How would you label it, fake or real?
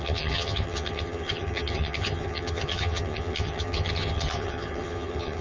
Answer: fake